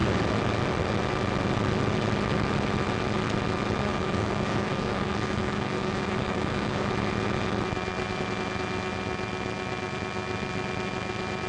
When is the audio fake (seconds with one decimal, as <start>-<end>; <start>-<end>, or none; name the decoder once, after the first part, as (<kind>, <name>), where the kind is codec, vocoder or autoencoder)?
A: 3.9-6.9 (codec, DAC)